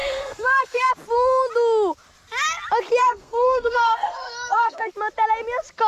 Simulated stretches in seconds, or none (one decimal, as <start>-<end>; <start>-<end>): 0.0-0.9; 3.0-4.9